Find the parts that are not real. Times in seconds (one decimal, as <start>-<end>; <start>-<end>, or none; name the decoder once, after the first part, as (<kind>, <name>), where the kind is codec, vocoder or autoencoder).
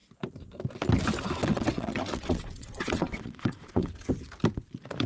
1.4-4.1 (vocoder, WaveNeXt)